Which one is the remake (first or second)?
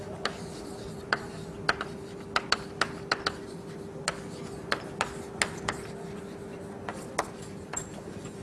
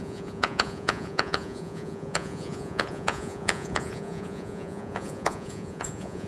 second